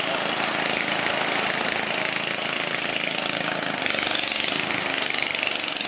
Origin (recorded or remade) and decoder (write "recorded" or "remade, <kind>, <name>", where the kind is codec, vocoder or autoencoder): recorded